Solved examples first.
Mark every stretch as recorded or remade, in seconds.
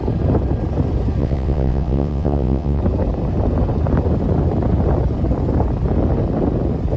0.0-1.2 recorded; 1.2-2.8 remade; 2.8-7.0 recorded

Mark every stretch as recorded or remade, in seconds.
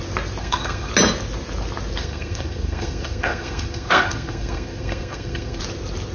0.0-0.4 recorded; 0.4-0.9 remade; 0.9-2.0 recorded; 2.0-5.6 remade; 5.6-6.1 recorded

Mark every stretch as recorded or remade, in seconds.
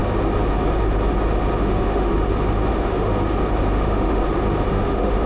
0.0-1.6 recorded; 1.6-2.1 remade; 2.1-2.7 recorded; 2.7-3.1 remade; 3.1-3.7 recorded; 3.7-4.2 remade; 4.2-4.7 recorded; 4.7-5.3 remade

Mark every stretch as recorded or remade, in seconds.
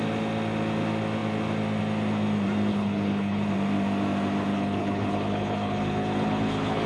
0.0-2.7 recorded; 2.7-3.5 remade; 3.5-4.5 recorded; 4.5-6.9 remade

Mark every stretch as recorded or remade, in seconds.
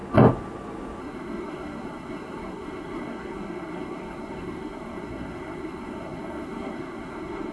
0.0-1.0 recorded; 1.0-7.5 remade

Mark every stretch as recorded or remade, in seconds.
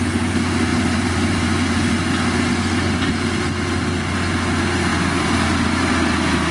0.0-0.7 recorded; 0.7-1.9 remade; 1.9-4.9 recorded; 4.9-5.9 remade; 5.9-6.5 recorded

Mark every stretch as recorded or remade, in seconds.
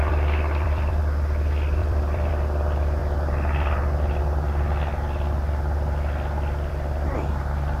0.0-1.0 remade; 1.0-1.8 recorded; 1.8-2.3 remade; 2.3-7.8 recorded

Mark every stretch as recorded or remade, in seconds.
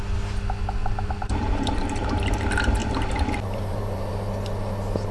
0.0-0.8 recorded; 0.8-2.0 remade; 2.0-2.8 recorded; 2.8-4.1 remade; 4.1-5.1 recorded